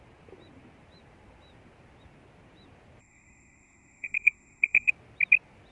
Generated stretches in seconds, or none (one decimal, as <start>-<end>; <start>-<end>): 3.0-4.9